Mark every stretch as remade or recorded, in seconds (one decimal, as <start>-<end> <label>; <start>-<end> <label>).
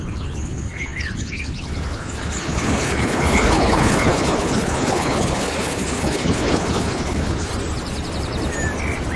0.0-7.5 remade; 7.5-9.2 recorded